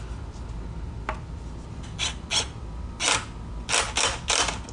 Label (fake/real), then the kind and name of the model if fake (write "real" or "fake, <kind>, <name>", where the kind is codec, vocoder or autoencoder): real